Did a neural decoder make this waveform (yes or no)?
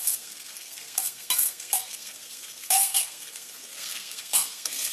yes